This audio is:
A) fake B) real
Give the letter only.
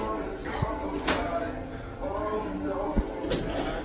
B